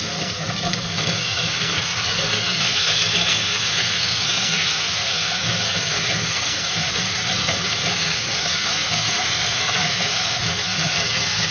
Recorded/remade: remade